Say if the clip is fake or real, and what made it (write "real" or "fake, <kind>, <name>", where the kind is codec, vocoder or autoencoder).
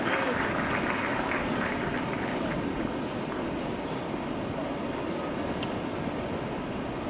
real